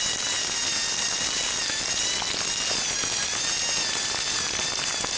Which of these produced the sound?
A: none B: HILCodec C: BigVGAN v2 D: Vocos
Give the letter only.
A